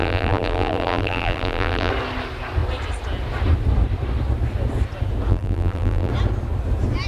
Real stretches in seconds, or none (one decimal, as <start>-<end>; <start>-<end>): 1.9-5.3; 6.1-7.1